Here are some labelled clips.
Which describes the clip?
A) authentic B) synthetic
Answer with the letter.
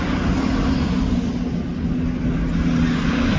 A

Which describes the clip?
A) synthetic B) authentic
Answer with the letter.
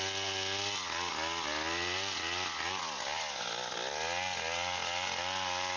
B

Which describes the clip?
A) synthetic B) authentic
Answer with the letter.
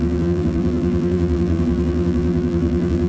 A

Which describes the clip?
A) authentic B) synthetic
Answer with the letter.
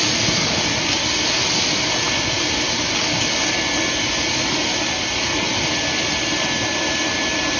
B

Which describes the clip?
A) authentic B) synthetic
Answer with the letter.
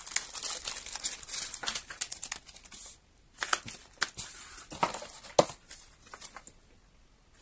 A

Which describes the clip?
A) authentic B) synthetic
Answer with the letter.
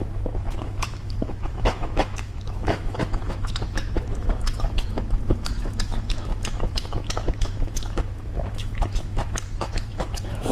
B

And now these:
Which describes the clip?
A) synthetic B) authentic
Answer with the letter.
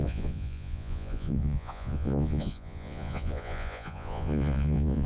A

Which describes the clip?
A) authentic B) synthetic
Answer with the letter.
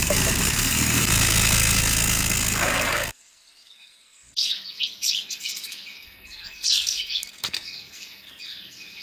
B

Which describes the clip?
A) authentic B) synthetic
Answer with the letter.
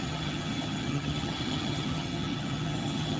B